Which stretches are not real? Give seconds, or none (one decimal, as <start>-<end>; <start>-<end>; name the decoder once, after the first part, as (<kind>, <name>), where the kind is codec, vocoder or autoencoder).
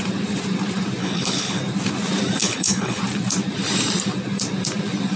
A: 1.0-1.6 (codec, HILCodec); 2.4-3.0